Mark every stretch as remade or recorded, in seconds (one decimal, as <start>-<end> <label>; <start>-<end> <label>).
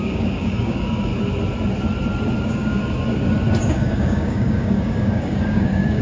0.0-1.1 remade; 1.1-2.4 recorded; 2.4-2.8 remade; 2.8-3.7 recorded; 3.7-6.0 remade